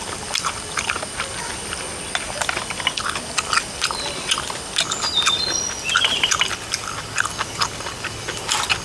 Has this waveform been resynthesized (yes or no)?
no